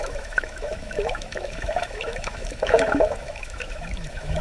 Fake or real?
fake